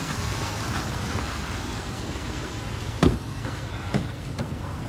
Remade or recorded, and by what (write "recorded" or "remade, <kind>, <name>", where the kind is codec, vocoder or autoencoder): remade, codec, SNAC